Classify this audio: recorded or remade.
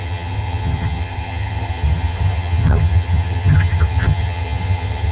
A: remade